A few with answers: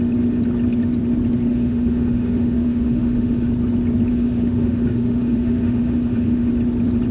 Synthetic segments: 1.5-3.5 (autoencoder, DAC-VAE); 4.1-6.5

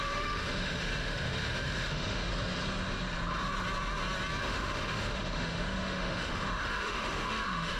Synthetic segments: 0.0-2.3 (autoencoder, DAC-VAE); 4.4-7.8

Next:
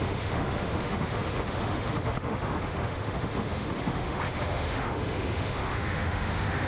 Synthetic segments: 0.0-6.7 (autoencoder, DAC-VAE)